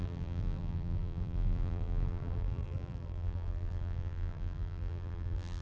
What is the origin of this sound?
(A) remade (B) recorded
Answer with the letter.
A